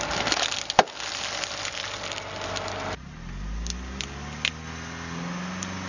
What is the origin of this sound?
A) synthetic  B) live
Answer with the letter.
B